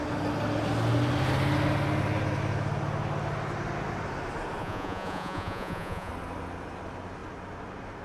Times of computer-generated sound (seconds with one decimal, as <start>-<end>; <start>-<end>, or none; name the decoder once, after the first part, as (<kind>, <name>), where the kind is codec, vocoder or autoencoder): 4.6-6.1 (vocoder, Vocos)